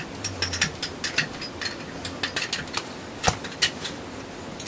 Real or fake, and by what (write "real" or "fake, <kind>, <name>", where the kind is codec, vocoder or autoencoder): real